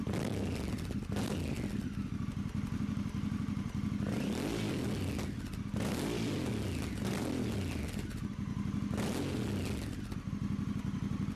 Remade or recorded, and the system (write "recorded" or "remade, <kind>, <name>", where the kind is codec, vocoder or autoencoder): recorded